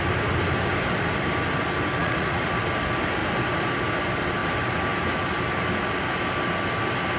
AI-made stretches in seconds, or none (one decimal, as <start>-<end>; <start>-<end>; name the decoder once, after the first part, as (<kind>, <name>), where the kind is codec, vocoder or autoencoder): 2.0-2.5 (vocoder, Vocos)